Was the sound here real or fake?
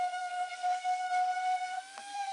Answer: fake